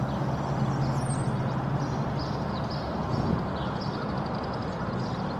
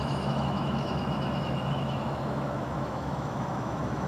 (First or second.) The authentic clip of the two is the first